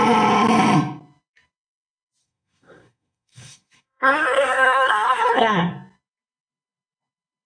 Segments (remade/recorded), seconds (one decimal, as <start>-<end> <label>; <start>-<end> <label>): 0.0-2.2 recorded; 2.2-5.7 remade; 5.7-7.5 recorded